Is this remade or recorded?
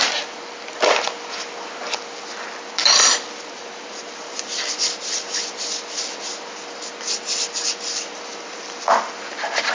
recorded